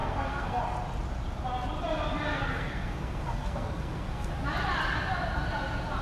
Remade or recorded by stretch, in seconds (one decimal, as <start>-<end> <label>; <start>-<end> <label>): 0.0-0.6 remade; 0.6-2.3 recorded; 2.3-4.3 remade; 4.3-6.0 recorded